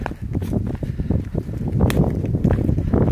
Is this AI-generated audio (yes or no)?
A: no